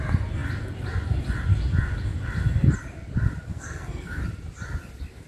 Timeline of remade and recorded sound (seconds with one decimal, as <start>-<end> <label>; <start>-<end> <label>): 0.0-3.5 recorded; 3.5-4.2 remade; 4.2-5.3 recorded